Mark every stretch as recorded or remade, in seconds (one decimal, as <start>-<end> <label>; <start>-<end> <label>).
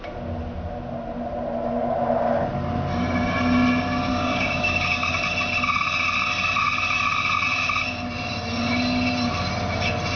0.0-4.1 recorded; 4.1-5.2 remade; 5.2-10.2 recorded